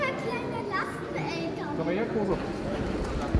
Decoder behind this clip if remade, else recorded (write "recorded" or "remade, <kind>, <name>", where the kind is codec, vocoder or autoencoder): recorded